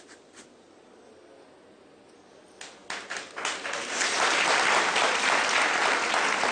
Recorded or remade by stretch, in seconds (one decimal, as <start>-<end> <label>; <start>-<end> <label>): 0.0-6.5 recorded